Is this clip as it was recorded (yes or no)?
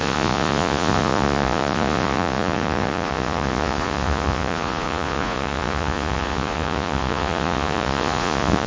no